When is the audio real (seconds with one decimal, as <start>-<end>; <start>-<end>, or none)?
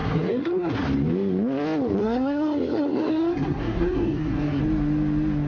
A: 0.7-2.0; 4.6-5.5